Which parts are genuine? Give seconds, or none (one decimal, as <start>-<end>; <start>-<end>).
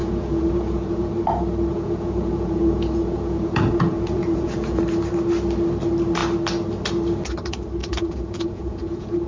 1.1-1.7; 4.8-7.8